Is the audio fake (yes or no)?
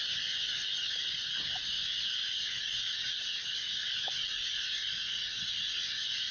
no